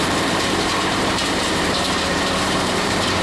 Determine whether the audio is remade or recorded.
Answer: remade